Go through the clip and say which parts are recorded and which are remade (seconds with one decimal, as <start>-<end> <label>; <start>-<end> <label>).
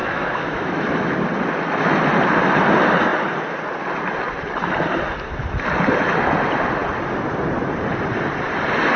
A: 0.0-1.1 remade; 1.1-9.0 recorded